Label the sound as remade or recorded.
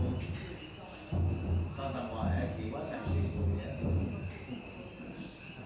recorded